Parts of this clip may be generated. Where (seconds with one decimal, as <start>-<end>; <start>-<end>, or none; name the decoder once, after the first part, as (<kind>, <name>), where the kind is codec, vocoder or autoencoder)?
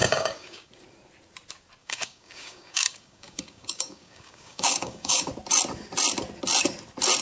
0.0-0.7 (codec, DAC); 1.8-5.3